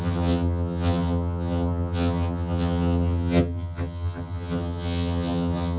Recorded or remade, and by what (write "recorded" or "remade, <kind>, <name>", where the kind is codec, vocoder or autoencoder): remade, vocoder, HiFi-GAN